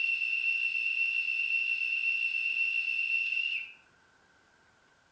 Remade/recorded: recorded